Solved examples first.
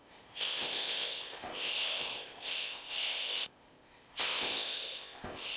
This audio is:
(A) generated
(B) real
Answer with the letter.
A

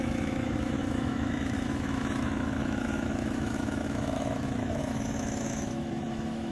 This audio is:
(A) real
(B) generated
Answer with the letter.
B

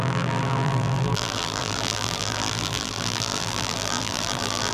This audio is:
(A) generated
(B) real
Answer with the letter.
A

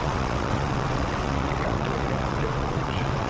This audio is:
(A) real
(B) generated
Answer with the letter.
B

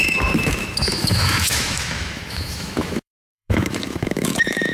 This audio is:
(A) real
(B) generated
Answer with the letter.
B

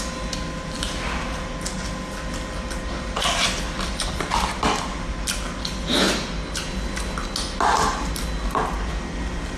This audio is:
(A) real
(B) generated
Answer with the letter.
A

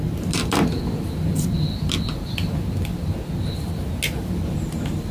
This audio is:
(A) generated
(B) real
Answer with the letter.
B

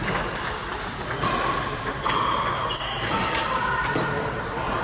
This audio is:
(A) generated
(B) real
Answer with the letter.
B